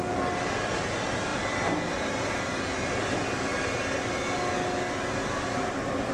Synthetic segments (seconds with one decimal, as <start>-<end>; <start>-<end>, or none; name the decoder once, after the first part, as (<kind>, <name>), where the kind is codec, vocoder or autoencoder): none